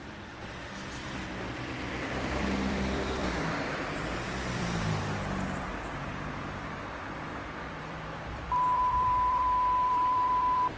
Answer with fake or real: fake